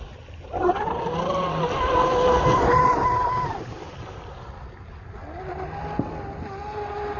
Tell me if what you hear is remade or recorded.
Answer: recorded